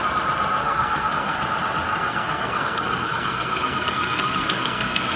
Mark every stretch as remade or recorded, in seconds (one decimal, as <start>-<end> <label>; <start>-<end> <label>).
0.0-0.6 recorded; 0.6-1.4 remade; 1.4-1.9 recorded; 1.9-5.2 remade